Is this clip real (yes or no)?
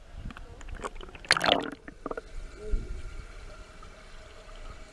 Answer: yes